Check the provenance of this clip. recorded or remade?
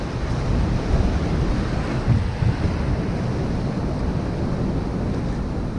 recorded